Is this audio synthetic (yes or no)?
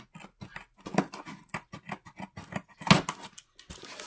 no